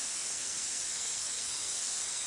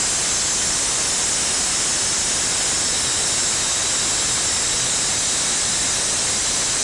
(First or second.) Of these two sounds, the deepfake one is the first